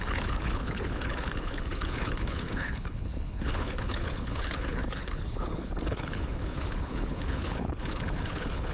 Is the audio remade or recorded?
remade